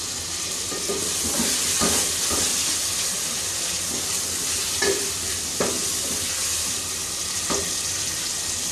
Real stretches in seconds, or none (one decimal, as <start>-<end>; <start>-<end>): 0.0-2.5; 7.7-8.7